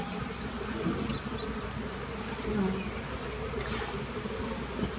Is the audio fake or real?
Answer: real